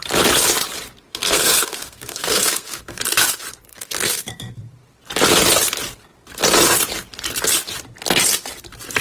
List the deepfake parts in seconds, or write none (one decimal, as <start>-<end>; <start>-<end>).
1.1-3.0; 3.7-4.6

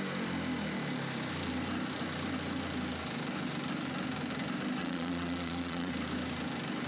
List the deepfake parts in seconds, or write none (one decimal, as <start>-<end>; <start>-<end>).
4.8-5.9

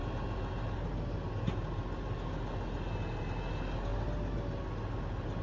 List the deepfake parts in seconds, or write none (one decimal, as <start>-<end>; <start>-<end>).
none